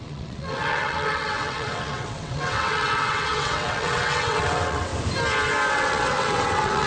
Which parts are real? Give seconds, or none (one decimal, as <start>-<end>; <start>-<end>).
4.9-5.7